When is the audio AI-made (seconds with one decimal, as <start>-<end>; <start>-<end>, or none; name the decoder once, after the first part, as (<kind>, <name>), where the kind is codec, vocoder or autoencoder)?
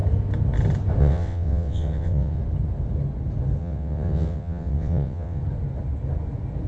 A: 1.0-2.4 (vocoder, WaveNeXt); 3.6-5.4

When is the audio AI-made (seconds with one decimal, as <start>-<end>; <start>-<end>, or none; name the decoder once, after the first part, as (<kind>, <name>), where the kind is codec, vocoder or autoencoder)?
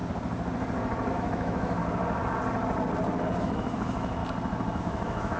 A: 1.1-1.8 (autoencoder, DAC-VAE); 3.4-4.2; 4.8-5.4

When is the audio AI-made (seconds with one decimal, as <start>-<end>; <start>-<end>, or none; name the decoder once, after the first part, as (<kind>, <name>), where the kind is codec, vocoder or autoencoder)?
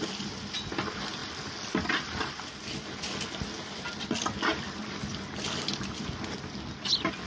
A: none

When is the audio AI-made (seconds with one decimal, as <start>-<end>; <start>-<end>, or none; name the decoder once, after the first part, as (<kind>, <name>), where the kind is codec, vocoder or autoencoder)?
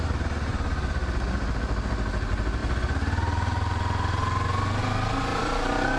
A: 5.3-6.0 (vocoder, BigVGAN v2)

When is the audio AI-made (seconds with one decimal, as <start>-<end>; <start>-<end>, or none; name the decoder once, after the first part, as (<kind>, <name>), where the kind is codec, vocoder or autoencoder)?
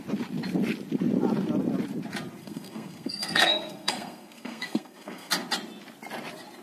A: 2.4-5.3 (codec, SNAC)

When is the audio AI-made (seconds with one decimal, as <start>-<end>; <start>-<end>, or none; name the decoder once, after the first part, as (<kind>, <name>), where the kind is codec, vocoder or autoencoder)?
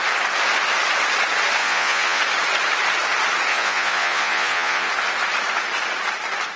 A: 1.6-2.2 (vocoder, Vocos); 3.5-4.9